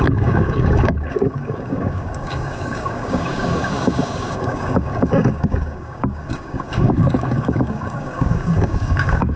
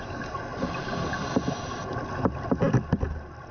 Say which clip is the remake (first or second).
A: first